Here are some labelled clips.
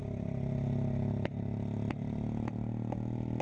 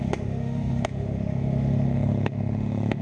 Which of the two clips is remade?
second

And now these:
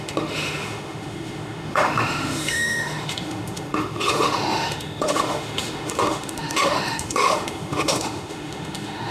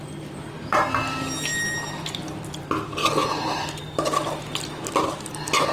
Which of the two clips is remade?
first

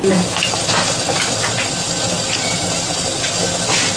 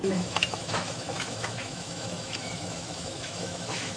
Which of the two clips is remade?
second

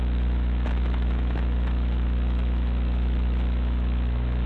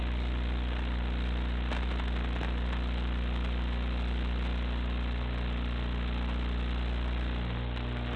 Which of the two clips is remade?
first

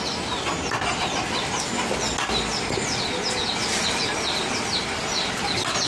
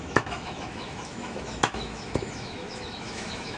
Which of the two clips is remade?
second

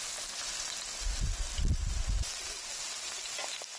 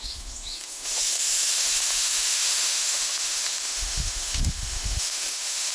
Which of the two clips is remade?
second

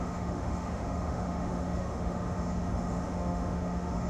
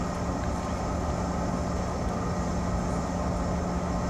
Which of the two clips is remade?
first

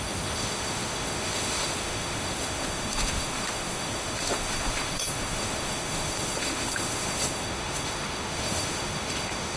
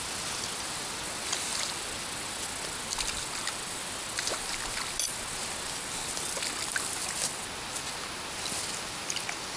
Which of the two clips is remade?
first